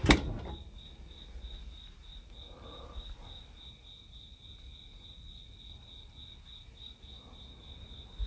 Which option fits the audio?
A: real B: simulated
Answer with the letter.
A